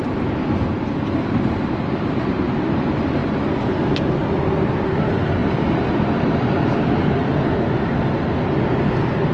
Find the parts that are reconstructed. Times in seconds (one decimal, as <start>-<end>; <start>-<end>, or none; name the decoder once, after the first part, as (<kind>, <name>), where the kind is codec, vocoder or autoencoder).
none

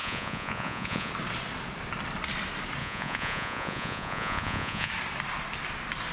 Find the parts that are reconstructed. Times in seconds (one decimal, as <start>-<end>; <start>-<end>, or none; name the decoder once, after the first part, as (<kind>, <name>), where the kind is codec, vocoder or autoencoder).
0.0-1.1 (vocoder, Vocos); 2.8-4.9